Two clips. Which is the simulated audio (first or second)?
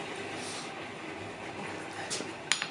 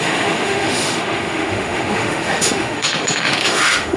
second